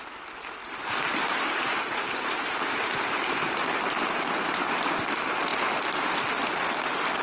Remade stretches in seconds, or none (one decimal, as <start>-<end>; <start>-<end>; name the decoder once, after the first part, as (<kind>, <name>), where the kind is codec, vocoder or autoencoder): 0.6-4.7 (vocoder, BigVGAN v2); 5.5-6.6